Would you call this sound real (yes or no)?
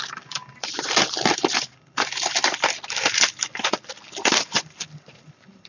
no